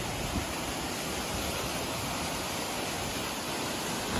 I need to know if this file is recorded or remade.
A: recorded